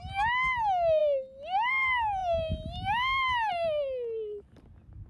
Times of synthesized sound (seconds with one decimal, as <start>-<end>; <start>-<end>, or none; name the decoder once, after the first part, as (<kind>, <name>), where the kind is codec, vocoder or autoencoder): none